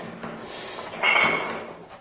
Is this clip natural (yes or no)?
yes